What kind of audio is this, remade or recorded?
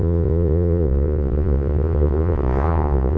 remade